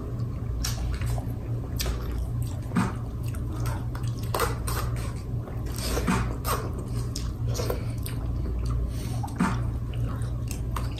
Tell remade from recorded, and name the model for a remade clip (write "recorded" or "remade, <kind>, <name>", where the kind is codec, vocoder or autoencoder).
recorded